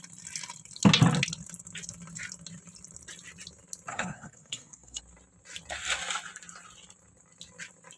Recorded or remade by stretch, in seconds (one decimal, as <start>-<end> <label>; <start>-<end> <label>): 0.0-3.9 recorded; 3.9-5.0 remade; 5.0-8.0 recorded